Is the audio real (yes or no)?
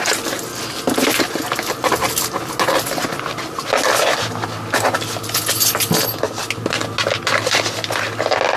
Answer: yes